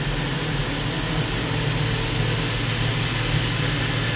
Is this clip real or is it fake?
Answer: real